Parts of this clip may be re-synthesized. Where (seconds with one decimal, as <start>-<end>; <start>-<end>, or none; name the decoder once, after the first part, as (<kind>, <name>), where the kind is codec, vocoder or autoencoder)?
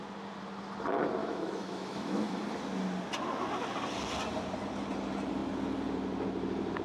1.2-2.4 (autoencoder, DAC-VAE)